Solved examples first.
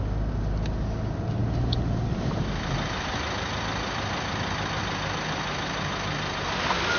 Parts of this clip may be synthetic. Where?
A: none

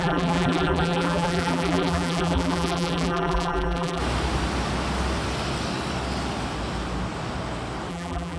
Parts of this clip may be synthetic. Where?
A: 0.0-4.0; 7.9-8.4

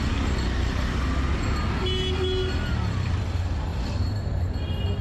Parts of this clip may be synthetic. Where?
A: none

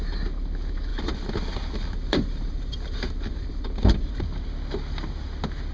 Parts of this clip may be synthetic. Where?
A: 0.9-4.2

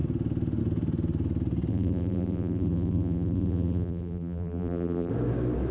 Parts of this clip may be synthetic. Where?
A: 1.7-5.1

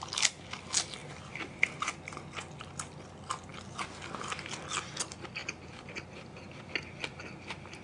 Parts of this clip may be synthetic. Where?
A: 1.0-1.9; 5.4-6.7

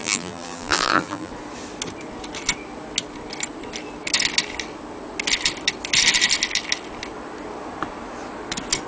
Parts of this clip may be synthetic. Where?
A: 0.0-1.3

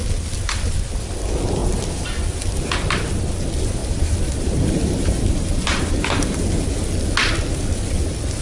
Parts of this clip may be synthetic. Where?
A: 3.8-6.4